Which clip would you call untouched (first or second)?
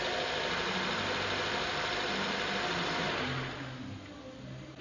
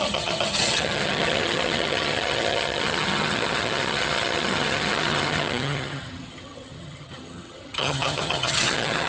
first